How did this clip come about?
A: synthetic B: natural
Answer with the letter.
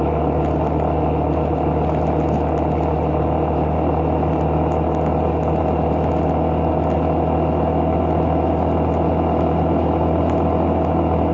B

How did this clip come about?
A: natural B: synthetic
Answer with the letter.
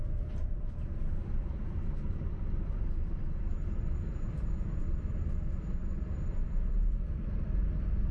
B